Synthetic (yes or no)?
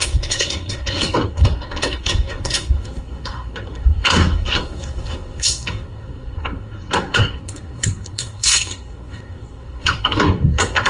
yes